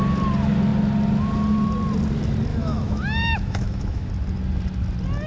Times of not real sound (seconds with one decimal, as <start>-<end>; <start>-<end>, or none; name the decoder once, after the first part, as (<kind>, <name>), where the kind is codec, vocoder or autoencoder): 2.5-4.1 (autoencoder, DAC-VAE)